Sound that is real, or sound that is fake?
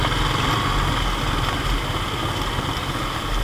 real